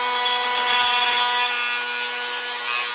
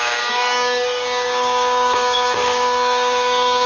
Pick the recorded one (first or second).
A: first